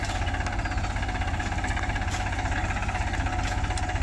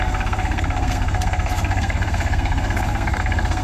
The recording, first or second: first